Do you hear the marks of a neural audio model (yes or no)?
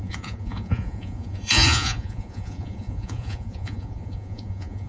yes